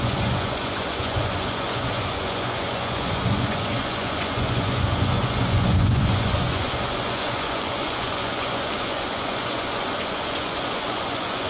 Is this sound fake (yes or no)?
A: yes